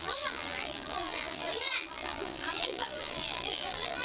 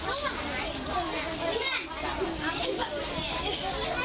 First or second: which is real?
second